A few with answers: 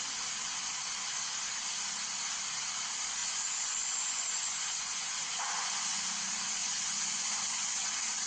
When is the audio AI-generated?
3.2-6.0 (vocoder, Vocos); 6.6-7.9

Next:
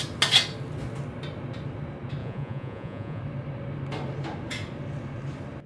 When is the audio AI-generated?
2.2-3.2 (vocoder, Vocos)

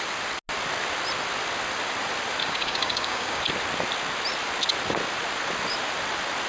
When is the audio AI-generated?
2.4-3.4 (codec, DAC)

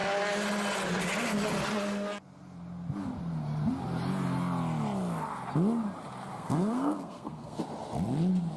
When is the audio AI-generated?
6.3-7.6 (codec, SNAC)

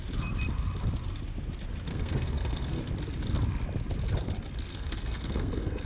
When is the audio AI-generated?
1.9-2.8 (codec, SNAC); 4.7-5.8

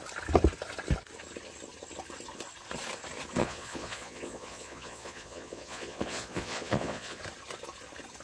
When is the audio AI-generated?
3.4-7.2 (vocoder, Vocos)

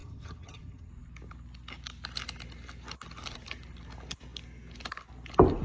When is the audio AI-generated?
0.0-0.9 (vocoder, HiFi-GAN)